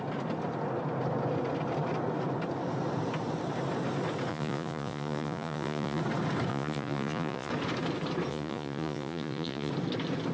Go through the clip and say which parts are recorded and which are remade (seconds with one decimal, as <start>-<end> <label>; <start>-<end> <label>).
0.0-4.3 recorded; 4.3-6.0 remade; 6.0-6.5 recorded; 6.5-7.5 remade; 7.5-8.3 recorded; 8.3-9.7 remade; 9.7-10.3 recorded